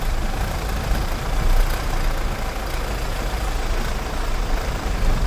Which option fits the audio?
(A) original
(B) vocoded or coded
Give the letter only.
A